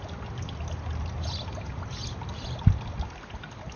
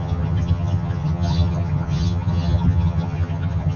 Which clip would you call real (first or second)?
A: first